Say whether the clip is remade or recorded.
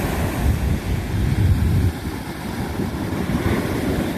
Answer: recorded